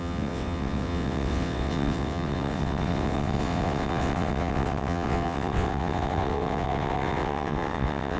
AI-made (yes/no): yes